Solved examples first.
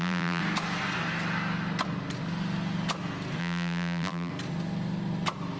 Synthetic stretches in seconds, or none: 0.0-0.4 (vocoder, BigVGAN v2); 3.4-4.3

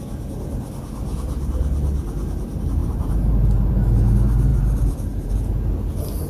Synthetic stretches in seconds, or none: 2.8-3.7 (vocoder, BigVGAN v2); 4.5-5.3

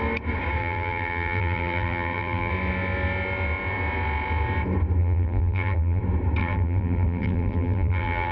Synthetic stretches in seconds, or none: 0.6-2.5 (vocoder, BigVGAN v2); 5.0-6.0; 6.4-8.3